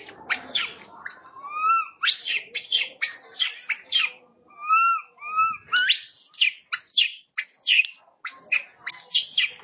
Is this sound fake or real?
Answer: real